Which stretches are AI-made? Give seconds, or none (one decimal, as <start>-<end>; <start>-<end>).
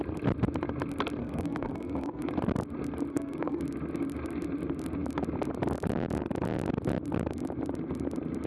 1.2-2.3; 3.1-3.6